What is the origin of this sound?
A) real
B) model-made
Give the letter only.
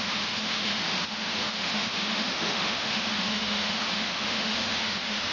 B